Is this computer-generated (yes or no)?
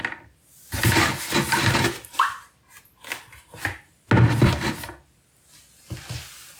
no